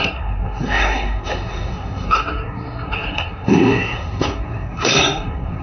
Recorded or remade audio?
remade